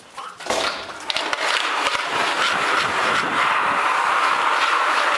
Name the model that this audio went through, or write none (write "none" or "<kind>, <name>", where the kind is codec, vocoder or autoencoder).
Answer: none